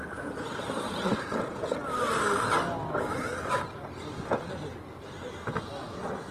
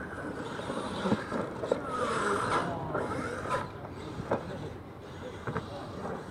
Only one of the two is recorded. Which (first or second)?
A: first